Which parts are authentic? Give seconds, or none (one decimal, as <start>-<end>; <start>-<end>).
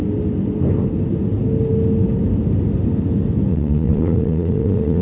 0.0-3.5